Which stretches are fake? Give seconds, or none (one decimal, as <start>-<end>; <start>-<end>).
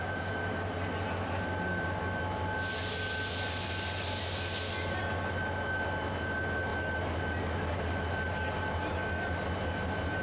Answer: none